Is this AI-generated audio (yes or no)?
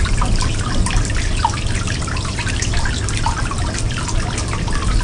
no